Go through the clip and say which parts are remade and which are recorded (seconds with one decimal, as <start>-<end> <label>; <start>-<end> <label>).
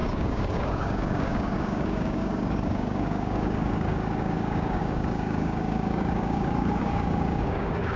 0.0-8.0 remade